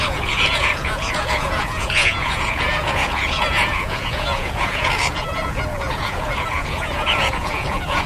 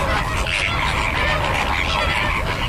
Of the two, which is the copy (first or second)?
first